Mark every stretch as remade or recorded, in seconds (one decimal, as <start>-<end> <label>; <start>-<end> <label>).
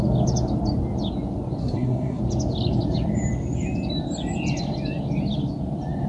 0.0-1.6 recorded; 1.6-2.2 remade; 2.2-6.1 recorded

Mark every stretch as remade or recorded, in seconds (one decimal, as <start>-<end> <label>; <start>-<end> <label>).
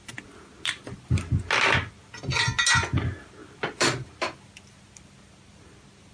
0.0-6.1 recorded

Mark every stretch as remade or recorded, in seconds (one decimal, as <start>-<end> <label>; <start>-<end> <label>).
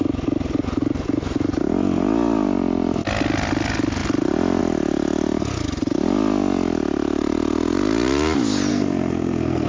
0.0-8.7 recorded; 8.7-9.7 remade